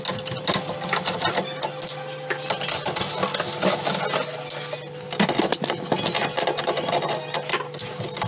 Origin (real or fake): real